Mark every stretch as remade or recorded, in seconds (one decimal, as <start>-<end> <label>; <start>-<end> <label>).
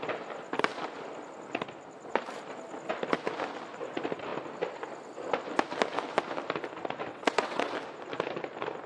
0.0-7.1 recorded; 7.1-7.7 remade; 7.7-8.9 recorded